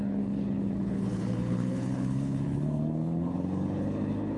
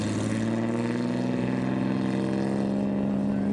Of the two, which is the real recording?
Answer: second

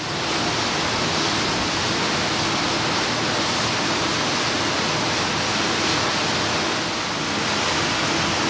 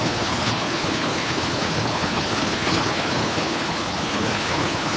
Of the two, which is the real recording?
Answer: first